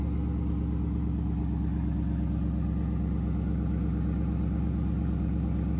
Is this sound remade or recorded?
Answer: recorded